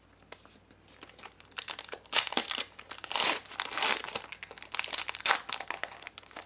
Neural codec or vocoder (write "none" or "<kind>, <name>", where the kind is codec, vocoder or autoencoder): none